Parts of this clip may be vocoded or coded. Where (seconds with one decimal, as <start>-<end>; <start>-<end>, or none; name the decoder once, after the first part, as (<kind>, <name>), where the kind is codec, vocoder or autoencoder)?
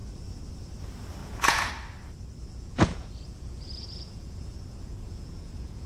1.2-1.7 (vocoder, Vocos); 2.4-5.9